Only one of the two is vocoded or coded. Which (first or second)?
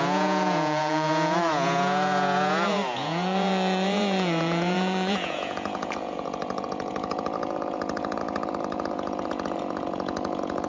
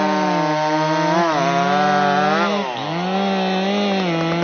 first